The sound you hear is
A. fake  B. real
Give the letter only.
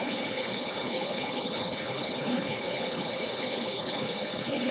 A